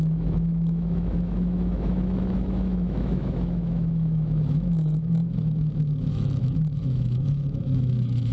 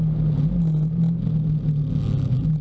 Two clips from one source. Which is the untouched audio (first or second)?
second